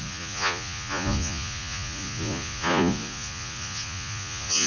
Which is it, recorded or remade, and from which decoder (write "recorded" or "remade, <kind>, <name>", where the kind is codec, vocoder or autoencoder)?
remade, vocoder, Vocos